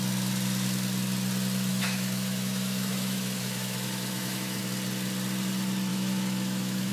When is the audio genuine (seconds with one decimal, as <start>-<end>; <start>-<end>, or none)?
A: 0.0-1.7; 4.6-5.9